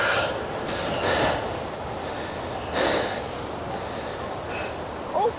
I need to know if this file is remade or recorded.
recorded